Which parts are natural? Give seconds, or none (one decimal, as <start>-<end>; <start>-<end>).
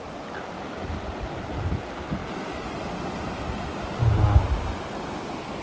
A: 2.2-5.6